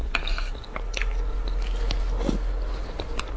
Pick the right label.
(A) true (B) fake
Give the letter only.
A